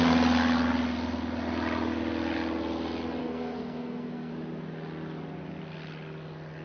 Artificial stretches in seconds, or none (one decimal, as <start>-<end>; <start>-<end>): 3.2-4.3